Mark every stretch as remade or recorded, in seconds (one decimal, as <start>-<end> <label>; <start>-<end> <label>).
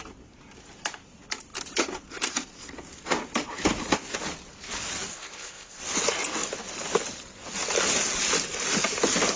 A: 0.0-5.1 recorded; 5.1-5.8 remade; 5.8-9.4 recorded